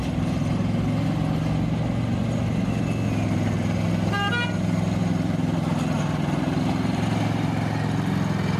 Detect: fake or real real